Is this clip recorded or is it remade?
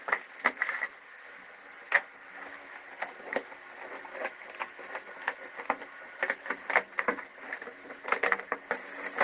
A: recorded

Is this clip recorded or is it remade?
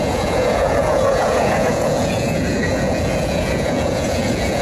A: remade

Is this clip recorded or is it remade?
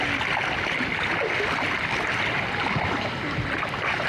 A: recorded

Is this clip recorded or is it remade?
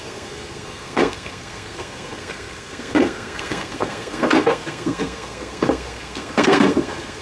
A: remade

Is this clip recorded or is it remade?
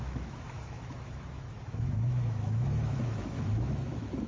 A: remade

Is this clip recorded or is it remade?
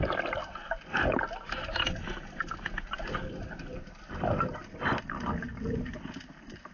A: recorded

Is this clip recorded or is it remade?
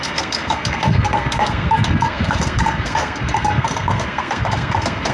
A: remade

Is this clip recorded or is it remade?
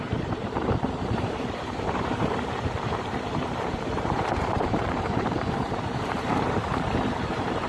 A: remade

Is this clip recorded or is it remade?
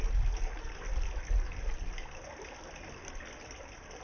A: recorded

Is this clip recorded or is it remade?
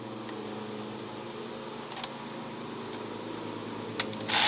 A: recorded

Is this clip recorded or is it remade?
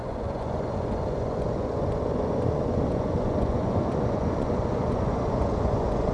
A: remade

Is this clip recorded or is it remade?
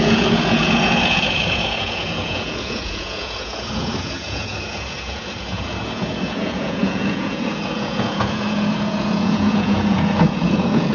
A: remade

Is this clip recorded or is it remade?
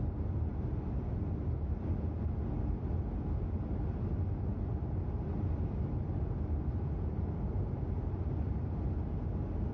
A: recorded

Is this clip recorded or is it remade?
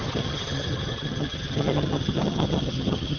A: remade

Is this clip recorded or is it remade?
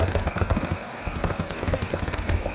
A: remade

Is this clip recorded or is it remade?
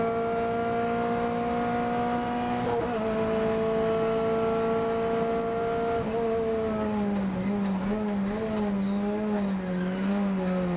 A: recorded